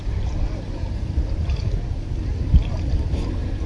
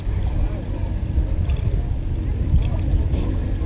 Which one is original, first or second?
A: second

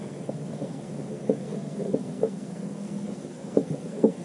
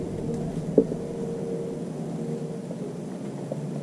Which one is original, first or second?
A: second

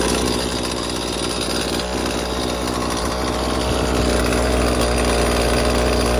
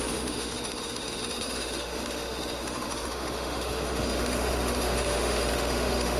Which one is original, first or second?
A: first